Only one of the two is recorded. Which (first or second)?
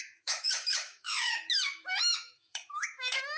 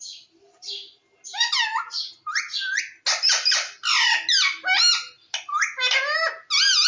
second